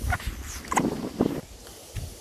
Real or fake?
real